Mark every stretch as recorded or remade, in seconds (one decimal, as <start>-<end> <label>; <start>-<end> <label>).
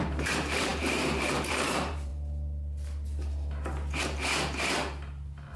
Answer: 0.0-2.1 remade; 2.1-5.6 recorded